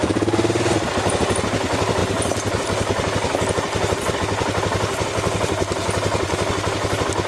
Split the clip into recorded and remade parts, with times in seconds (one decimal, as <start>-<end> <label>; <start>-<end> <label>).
0.0-7.3 recorded